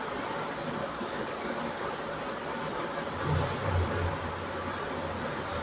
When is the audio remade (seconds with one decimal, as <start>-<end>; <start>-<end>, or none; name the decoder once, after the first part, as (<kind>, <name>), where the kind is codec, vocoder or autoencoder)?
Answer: 0.8-1.9 (codec, DAC)